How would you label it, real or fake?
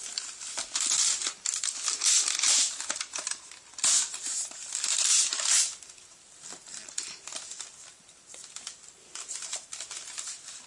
fake